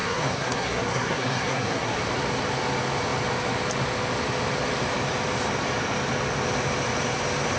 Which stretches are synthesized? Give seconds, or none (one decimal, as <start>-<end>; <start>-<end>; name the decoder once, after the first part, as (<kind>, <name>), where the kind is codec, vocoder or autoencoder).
0.0-2.0 (codec, SNAC)